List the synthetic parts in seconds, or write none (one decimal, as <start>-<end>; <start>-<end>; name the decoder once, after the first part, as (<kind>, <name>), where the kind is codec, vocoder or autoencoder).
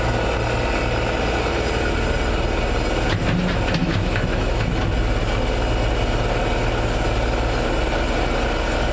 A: 3.8-4.8 (autoencoder, DAC-VAE)